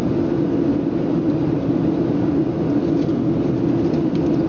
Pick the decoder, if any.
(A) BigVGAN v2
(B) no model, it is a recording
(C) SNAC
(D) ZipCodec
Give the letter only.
B